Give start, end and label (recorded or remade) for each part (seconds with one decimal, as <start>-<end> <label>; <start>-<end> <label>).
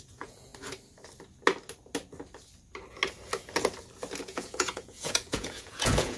0.0-0.5 remade; 0.5-4.2 recorded; 4.2-6.2 remade